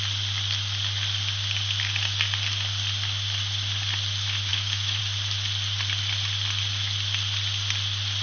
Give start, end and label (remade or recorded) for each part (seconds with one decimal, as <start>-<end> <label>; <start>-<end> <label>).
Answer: 0.0-4.5 recorded; 4.5-5.0 remade; 5.0-8.2 recorded